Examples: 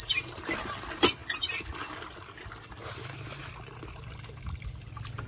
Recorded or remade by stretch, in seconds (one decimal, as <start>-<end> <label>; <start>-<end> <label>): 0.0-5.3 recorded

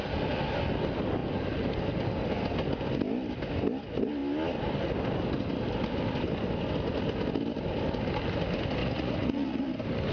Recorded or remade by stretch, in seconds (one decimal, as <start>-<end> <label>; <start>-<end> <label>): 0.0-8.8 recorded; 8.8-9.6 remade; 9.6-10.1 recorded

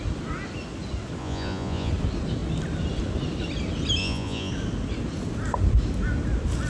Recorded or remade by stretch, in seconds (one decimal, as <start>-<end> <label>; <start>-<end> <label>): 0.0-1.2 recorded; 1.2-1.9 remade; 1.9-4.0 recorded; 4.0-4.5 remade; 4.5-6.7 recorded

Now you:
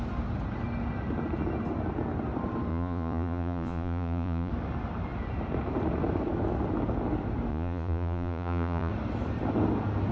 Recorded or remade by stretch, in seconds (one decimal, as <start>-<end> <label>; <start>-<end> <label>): 0.0-2.7 recorded; 2.7-4.5 remade; 4.5-7.5 recorded; 7.5-8.9 remade; 8.9-10.1 recorded

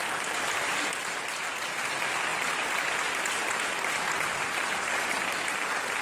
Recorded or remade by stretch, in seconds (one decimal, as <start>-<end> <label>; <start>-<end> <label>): 0.0-6.0 recorded

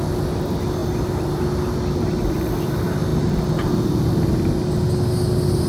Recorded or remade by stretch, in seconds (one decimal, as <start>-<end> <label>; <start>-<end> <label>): 0.0-5.7 recorded